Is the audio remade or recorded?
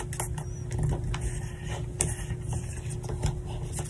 recorded